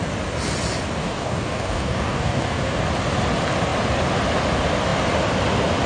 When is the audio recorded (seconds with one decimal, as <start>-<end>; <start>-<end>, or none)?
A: 0.0-1.0; 2.8-5.9